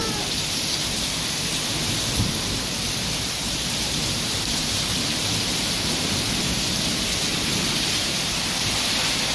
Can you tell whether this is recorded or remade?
remade